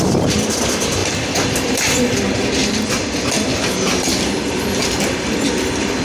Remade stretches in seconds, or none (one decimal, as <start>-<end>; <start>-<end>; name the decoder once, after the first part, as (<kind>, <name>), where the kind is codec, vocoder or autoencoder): 0.0-2.6 (vocoder, BigVGAN v2); 3.6-6.0